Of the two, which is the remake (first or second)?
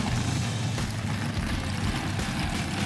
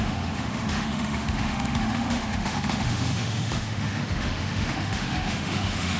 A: second